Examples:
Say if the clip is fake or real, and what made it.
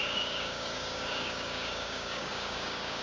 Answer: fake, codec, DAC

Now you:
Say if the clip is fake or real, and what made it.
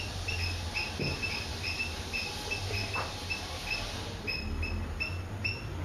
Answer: real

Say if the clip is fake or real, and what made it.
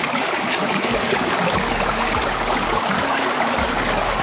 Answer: fake, codec, DAC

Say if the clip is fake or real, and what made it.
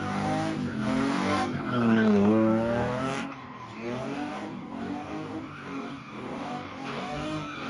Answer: fake, codec, DAC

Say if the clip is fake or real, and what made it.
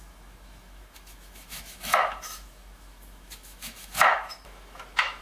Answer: fake, autoencoder, DAC-VAE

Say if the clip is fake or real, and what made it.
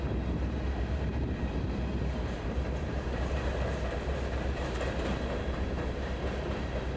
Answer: fake, vocoder, BigVGAN v2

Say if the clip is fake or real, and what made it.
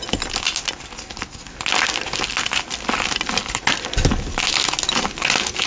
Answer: real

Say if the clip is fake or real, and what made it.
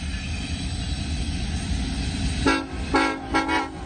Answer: real